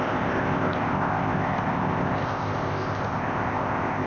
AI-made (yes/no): yes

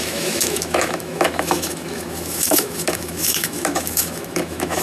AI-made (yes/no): yes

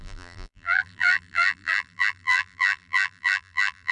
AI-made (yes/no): yes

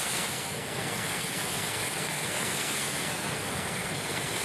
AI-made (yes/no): yes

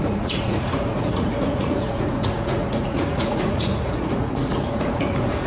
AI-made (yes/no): yes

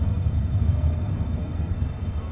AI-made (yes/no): yes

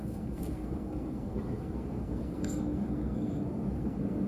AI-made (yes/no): yes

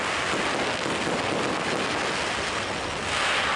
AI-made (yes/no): no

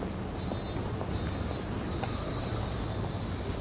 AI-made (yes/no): no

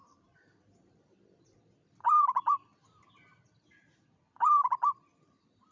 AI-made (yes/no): yes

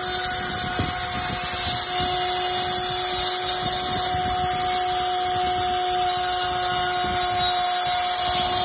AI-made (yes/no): no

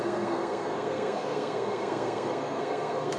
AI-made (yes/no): yes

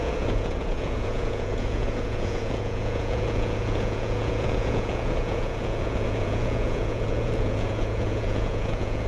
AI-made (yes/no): yes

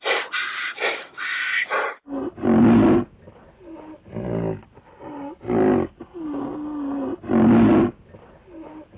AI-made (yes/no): no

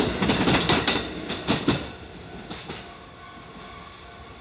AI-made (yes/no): no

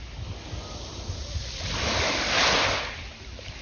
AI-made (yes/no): no